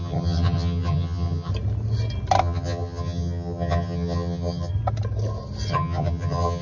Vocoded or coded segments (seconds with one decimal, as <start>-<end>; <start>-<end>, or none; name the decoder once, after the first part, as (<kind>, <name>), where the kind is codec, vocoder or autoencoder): 0.0-1.5 (vocoder, HiFi-GAN); 2.4-4.7; 5.7-6.6